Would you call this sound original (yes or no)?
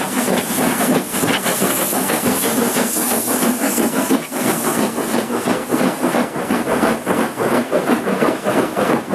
no